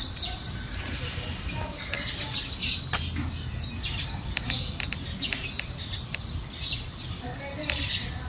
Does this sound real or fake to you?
real